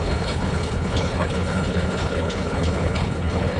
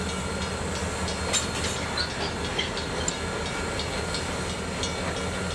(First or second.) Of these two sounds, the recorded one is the second